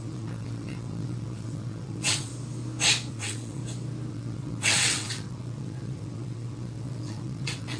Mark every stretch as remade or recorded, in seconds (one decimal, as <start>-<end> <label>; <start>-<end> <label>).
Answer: 0.0-2.3 remade; 2.3-3.1 recorded; 3.1-3.6 remade; 3.6-4.1 recorded; 4.1-7.8 remade